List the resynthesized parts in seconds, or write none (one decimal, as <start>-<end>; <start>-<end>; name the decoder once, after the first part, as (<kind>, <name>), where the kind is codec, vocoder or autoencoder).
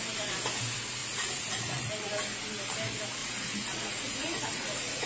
1.0-1.9 (vocoder, Vocos); 3.2-5.1